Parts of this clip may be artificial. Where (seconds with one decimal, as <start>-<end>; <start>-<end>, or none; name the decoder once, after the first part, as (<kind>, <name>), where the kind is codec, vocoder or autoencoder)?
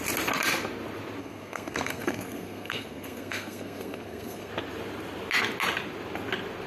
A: 1.2-4.5 (codec, SNAC)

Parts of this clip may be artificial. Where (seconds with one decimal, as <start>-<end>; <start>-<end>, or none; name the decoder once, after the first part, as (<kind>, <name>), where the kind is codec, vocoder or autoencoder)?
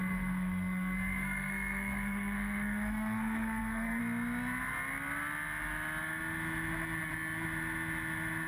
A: 0.0-4.0 (codec, SNAC)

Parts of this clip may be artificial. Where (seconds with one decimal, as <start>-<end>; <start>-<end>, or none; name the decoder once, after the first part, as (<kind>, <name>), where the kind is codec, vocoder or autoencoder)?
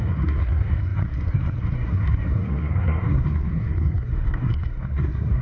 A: 0.0-5.4 (codec, SNAC)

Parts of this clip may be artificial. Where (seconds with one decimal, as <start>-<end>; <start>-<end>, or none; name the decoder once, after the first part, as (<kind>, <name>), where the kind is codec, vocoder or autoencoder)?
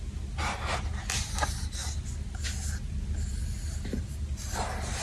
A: none